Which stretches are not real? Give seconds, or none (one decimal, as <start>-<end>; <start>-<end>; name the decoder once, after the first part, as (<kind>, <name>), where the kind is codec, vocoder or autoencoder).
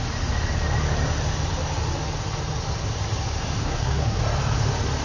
3.6-4.2 (codec, SNAC)